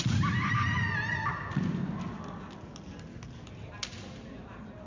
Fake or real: real